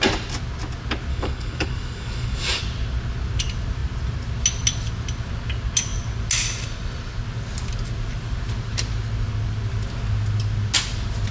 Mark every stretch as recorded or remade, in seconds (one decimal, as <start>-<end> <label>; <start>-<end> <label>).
0.0-1.1 recorded; 1.1-2.6 remade; 2.6-11.3 recorded